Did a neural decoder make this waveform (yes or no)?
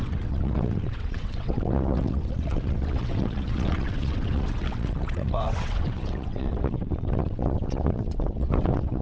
yes